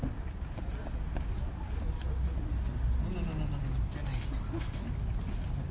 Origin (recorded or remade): recorded